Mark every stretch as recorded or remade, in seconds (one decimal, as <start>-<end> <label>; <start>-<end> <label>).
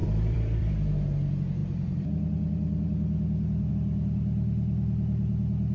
0.0-0.7 remade; 0.7-1.6 recorded; 1.6-3.7 remade; 3.7-5.7 recorded